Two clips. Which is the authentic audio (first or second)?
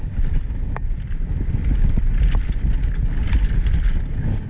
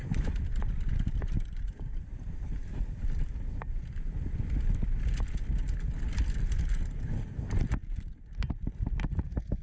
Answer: first